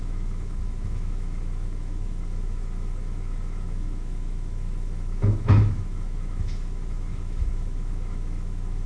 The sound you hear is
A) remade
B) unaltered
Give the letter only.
A